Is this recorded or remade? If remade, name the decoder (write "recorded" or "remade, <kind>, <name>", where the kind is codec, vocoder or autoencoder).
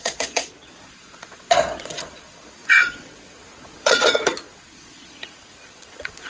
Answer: remade, vocoder, Vocos